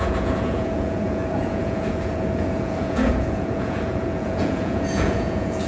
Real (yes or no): no